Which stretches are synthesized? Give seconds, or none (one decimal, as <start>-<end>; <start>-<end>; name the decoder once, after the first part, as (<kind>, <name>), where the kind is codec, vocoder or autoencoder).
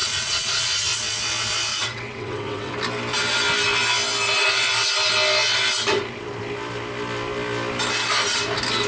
0.0-0.7 (vocoder, WaveNeXt); 1.7-2.7